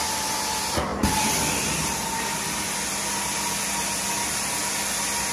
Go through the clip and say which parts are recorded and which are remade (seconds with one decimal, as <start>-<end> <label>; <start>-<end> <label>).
0.0-5.3 recorded

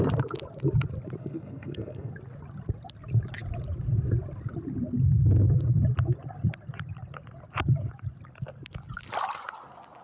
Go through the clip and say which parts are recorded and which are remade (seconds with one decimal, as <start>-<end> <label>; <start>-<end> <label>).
0.0-1.2 recorded; 1.2-2.1 remade; 2.1-10.0 recorded

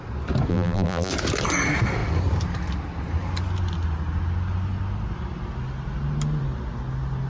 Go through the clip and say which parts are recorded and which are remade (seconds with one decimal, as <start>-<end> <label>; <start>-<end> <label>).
0.0-0.5 recorded; 0.5-1.1 remade; 1.1-7.3 recorded

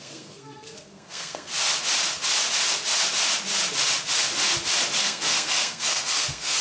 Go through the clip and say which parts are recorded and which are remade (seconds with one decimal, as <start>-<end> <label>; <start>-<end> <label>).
0.0-1.5 remade; 1.5-5.0 recorded; 5.0-6.6 remade